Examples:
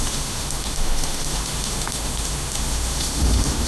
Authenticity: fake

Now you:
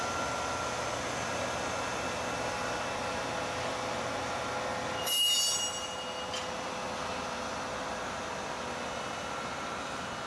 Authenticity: real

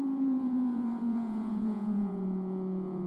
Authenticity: fake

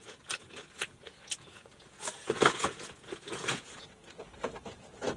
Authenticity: fake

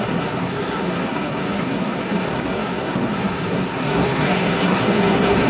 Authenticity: fake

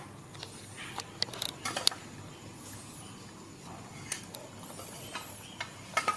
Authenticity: real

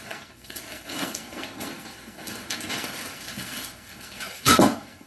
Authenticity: fake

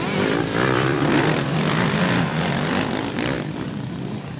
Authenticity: fake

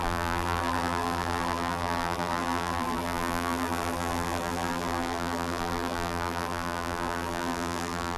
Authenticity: fake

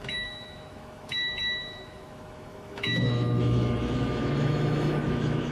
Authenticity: fake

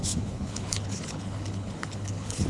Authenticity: fake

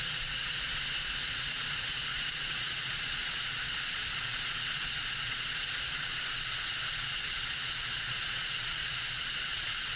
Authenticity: fake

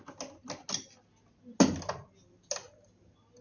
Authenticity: real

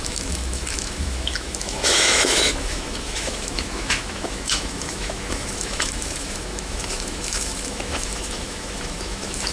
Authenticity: fake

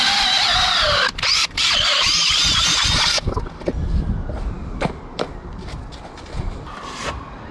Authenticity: real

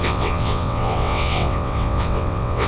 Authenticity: fake